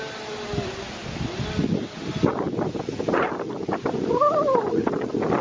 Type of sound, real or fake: real